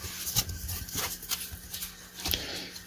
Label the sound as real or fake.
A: real